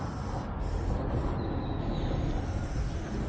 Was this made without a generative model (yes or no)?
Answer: yes